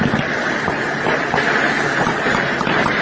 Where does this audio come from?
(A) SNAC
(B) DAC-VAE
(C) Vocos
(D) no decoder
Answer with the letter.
D